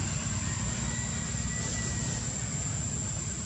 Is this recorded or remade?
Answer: recorded